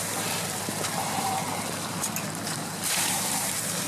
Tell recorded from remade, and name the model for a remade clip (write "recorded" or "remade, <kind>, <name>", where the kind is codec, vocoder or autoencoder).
remade, vocoder, BigVGAN v2